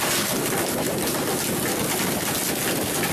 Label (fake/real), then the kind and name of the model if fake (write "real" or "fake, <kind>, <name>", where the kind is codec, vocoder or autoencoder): real